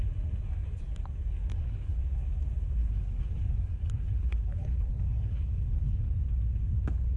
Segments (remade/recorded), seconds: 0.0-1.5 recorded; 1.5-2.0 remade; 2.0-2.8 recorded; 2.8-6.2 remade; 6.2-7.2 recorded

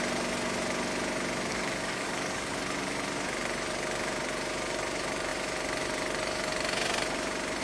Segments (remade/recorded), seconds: 0.0-1.5 recorded; 1.5-2.5 remade; 2.5-7.6 recorded

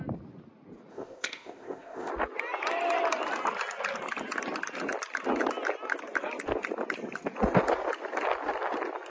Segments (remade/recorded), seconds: 0.0-0.9 recorded; 0.9-2.1 remade; 2.1-9.1 recorded

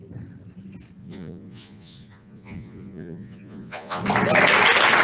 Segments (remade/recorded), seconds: 0.0-1.0 recorded; 1.0-4.0 remade; 4.0-5.0 recorded